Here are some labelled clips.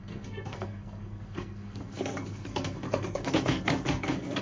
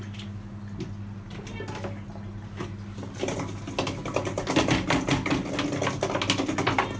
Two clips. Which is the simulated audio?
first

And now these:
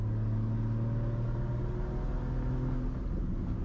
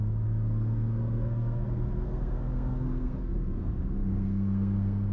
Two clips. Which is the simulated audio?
second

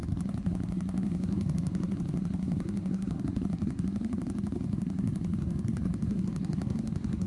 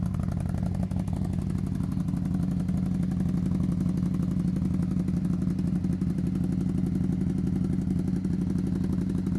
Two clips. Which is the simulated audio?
first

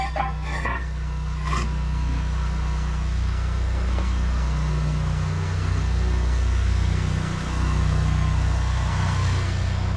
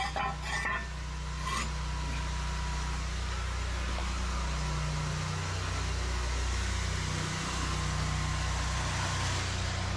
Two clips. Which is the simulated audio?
first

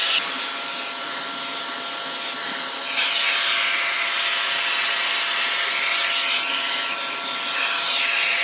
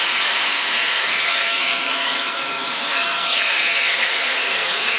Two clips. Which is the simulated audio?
second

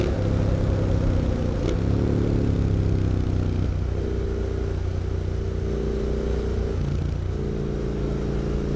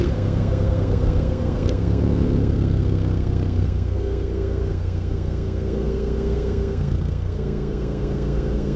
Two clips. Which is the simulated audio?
second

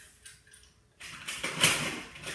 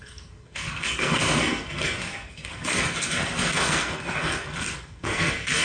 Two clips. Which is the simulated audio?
second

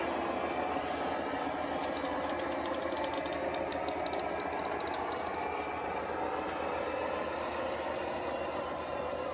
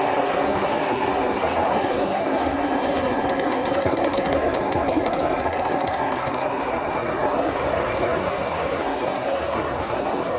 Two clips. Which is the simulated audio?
second